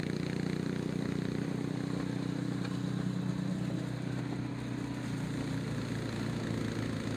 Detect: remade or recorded recorded